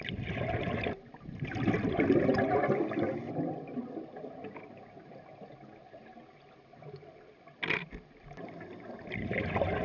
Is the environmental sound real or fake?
real